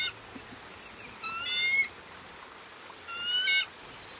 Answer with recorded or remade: recorded